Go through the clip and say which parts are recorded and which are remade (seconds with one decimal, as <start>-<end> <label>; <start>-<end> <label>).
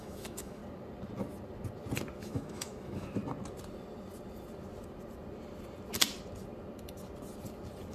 0.0-0.6 remade; 0.6-2.2 recorded; 2.2-3.2 remade; 3.2-7.9 recorded